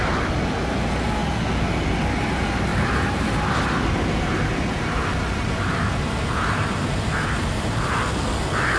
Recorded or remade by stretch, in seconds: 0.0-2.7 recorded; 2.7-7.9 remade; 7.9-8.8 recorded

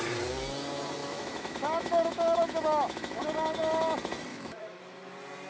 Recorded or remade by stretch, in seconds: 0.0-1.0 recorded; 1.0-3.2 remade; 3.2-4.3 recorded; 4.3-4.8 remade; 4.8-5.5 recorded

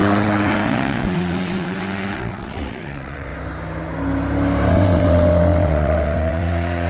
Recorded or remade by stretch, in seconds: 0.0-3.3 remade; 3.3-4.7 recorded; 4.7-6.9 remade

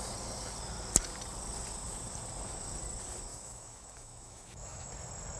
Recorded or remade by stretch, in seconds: 0.0-3.3 recorded; 3.3-4.9 remade; 4.9-5.4 recorded